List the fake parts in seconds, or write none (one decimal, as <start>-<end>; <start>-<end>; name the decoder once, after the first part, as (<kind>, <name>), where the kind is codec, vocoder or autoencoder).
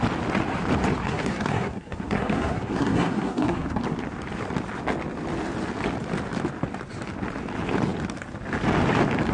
1.0-3.8 (codec, SNAC)